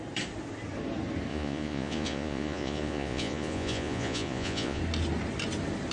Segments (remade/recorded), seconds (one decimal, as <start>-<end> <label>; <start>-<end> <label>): 0.0-1.3 recorded; 1.3-4.8 remade; 4.8-5.9 recorded